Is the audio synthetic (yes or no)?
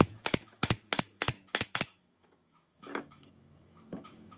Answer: yes